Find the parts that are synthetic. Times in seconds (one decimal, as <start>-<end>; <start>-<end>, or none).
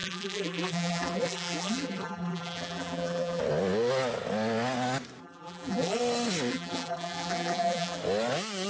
0.0-3.4; 5.2-6.0; 6.5-8.0